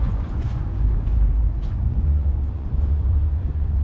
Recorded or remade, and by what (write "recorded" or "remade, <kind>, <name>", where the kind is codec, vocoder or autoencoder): remade, vocoder, Vocos